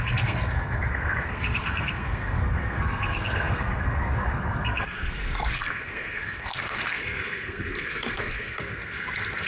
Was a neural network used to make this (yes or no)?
yes